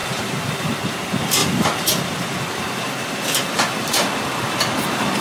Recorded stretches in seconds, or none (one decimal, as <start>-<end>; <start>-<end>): 0.7-1.4; 3.9-5.2